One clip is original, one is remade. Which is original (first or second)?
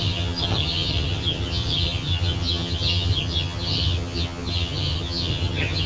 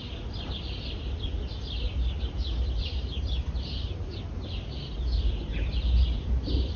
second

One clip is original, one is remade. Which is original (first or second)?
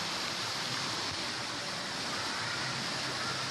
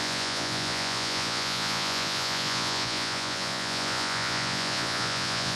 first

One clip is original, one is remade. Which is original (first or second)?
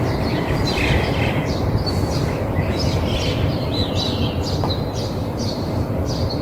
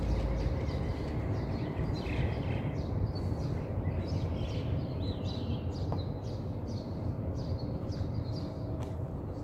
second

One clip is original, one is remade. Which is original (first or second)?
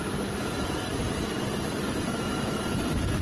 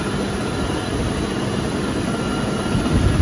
second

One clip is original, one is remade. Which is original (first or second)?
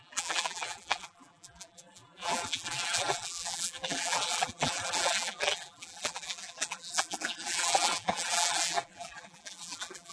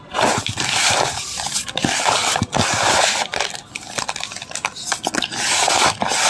second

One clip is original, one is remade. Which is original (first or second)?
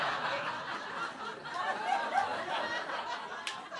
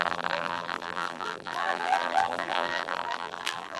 first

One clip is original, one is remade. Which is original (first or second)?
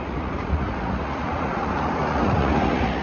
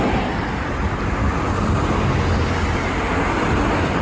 second